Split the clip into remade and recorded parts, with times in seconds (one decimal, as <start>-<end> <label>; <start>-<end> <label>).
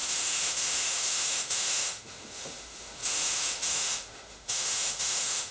0.0-5.5 remade